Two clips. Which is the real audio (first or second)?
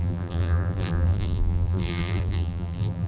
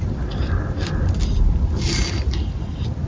second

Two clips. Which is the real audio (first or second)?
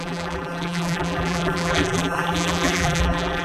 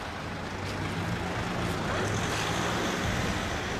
second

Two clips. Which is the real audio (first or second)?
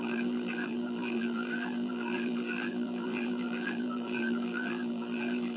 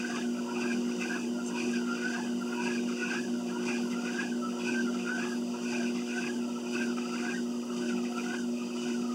second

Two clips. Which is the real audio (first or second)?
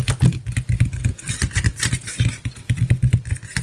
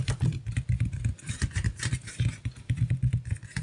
first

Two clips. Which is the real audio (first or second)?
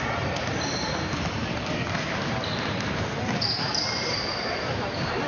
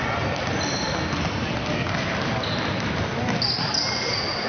second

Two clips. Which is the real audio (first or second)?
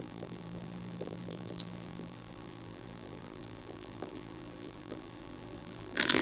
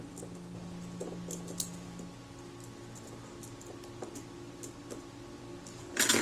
second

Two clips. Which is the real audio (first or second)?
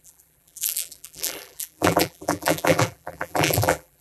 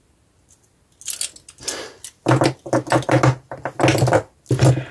second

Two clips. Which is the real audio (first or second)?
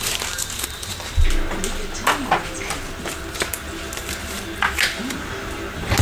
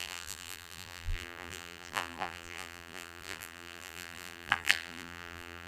first